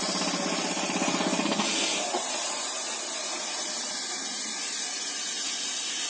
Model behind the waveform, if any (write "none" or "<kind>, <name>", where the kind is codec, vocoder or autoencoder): none